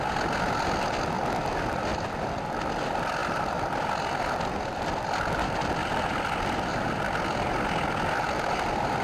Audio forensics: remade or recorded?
recorded